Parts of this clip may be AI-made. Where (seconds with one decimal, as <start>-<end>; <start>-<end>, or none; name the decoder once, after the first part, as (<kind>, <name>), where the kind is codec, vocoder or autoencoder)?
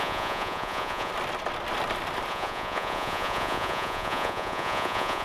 0.0-1.1 (vocoder, Vocos); 2.3-5.2